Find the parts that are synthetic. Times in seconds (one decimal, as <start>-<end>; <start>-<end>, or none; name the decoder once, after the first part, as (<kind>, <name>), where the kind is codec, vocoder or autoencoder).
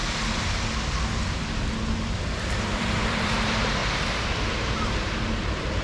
2.6-3.8 (vocoder, BigVGAN v2); 4.9-5.8